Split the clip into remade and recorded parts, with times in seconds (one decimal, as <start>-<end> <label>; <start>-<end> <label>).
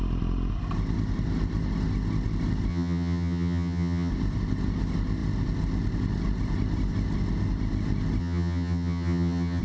0.0-2.7 recorded; 2.7-4.1 remade; 4.1-8.2 recorded; 8.2-9.6 remade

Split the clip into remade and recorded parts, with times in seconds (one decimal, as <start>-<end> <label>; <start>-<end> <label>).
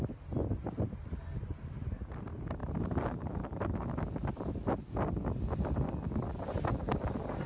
0.0-7.5 recorded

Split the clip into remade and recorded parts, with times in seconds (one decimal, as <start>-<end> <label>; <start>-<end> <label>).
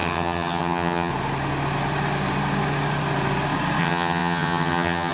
0.0-1.1 remade; 1.1-3.8 recorded; 3.8-5.1 remade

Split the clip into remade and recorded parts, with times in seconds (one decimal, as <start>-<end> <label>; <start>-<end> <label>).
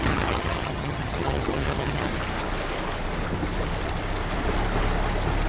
0.0-2.1 remade; 2.1-5.5 recorded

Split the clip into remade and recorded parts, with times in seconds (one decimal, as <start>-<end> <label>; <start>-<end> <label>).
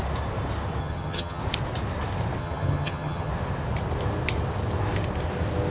0.0-0.8 recorded; 0.8-1.4 remade; 1.4-2.4 recorded; 2.4-3.3 remade; 3.3-5.7 recorded